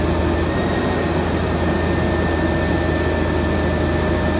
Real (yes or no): yes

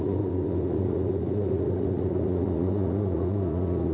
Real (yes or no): no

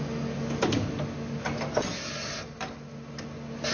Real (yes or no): yes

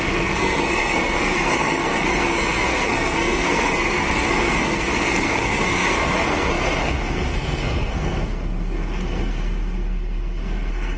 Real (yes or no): no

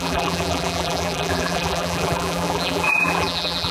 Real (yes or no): no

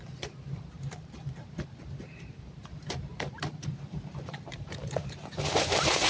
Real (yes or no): no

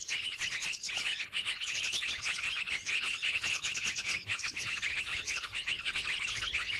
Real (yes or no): no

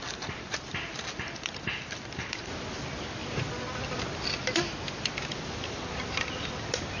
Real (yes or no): yes